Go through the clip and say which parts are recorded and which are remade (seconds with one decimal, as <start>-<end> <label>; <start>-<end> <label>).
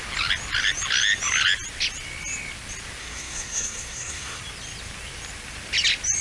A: 0.0-3.0 recorded; 3.0-4.4 remade; 4.4-6.2 recorded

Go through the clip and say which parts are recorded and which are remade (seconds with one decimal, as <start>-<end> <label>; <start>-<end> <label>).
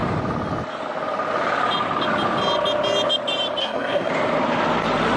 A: 0.0-3.6 recorded; 3.6-4.1 remade; 4.1-5.2 recorded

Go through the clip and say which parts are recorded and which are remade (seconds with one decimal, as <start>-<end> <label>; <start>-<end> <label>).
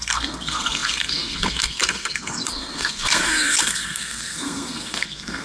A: 0.0-5.4 remade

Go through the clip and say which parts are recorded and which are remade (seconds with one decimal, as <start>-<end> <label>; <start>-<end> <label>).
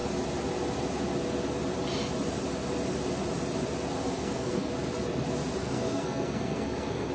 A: 0.0-4.0 recorded; 4.0-4.7 remade; 4.7-5.6 recorded; 5.6-7.1 remade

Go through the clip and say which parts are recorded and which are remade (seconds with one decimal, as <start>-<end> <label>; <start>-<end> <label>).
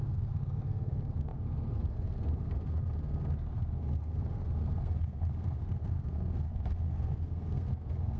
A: 0.0-8.2 remade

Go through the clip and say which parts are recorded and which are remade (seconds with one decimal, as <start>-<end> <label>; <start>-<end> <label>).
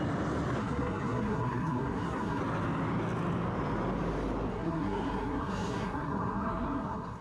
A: 0.0-0.6 recorded; 0.6-2.4 remade; 2.4-4.5 recorded; 4.5-7.2 remade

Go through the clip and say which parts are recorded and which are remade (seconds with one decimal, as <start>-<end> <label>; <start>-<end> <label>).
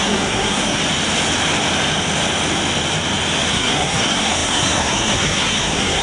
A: 0.0-0.8 remade; 0.8-3.5 recorded; 3.5-6.0 remade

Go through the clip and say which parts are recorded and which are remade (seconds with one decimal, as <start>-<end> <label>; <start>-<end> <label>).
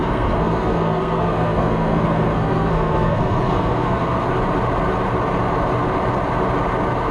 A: 0.0-4.3 remade; 4.3-7.1 recorded